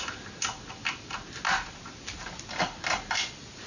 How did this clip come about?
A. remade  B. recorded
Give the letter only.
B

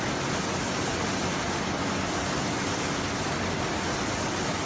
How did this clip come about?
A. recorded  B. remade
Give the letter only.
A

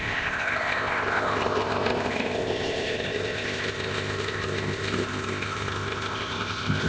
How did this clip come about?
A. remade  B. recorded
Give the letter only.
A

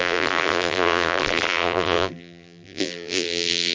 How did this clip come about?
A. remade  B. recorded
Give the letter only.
A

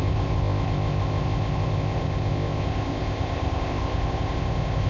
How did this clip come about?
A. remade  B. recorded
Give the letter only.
A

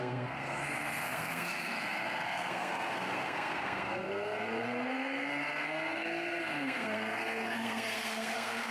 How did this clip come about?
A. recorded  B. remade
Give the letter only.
B